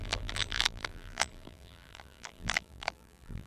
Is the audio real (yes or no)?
no